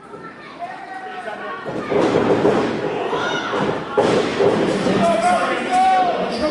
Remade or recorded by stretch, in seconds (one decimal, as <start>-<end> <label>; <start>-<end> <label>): 0.0-1.1 remade; 1.1-1.8 recorded; 1.8-2.5 remade; 2.5-3.1 recorded; 3.1-6.5 remade

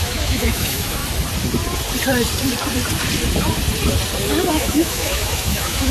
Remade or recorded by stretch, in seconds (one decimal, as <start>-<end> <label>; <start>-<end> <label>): 0.0-1.0 remade; 1.0-4.5 recorded; 4.5-5.9 remade